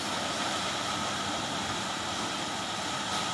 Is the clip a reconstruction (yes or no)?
no